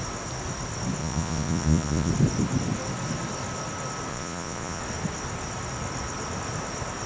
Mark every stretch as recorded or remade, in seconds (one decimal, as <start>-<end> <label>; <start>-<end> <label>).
0.0-1.0 recorded; 1.0-2.1 remade; 2.1-4.1 recorded; 4.1-4.8 remade; 4.8-7.1 recorded